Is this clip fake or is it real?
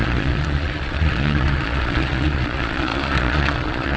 fake